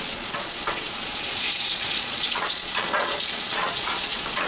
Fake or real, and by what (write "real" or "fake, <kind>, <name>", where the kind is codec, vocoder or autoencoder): fake, vocoder, Vocos